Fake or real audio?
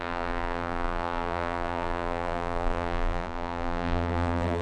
fake